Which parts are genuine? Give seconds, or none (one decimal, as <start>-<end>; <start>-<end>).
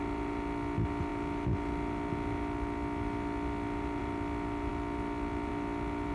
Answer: 0.0-6.1